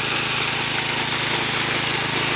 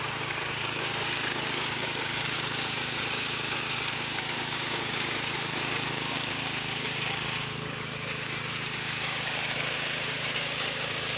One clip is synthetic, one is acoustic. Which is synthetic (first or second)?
second